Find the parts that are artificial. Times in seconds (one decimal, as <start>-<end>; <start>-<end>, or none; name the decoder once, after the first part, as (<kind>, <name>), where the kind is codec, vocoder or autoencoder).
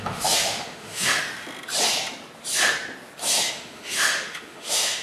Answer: 0.0-1.3 (autoencoder, DAC-VAE); 3.5-5.0